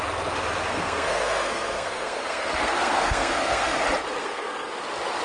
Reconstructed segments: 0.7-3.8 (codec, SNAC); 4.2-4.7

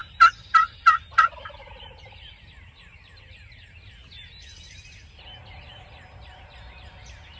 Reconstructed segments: none